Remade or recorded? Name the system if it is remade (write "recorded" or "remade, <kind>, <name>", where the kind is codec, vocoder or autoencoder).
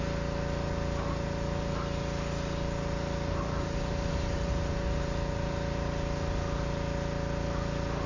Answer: recorded